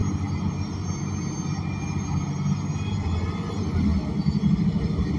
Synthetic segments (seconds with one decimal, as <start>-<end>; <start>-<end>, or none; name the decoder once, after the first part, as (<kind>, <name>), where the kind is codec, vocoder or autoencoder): none